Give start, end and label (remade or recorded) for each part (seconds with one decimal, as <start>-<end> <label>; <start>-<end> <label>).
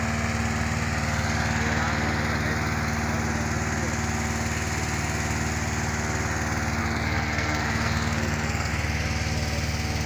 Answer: 0.0-6.8 recorded; 6.8-8.7 remade; 8.7-10.1 recorded